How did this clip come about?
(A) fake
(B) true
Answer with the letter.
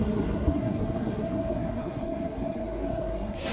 A